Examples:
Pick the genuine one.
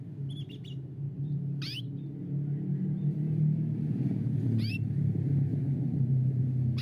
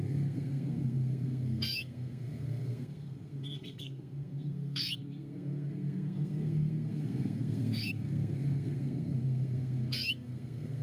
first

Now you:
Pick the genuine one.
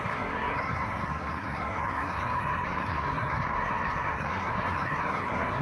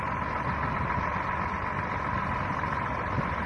second